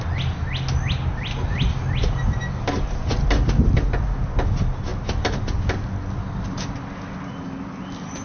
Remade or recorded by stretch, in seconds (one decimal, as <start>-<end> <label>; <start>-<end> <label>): 0.0-8.2 recorded